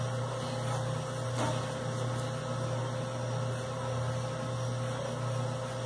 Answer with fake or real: real